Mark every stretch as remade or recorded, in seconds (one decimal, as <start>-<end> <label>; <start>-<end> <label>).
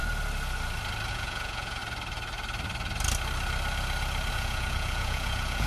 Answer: 0.0-1.1 recorded; 1.1-1.8 remade; 1.8-4.3 recorded; 4.3-5.7 remade